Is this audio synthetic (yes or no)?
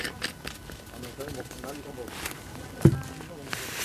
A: no